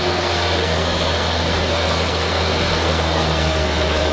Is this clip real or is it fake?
fake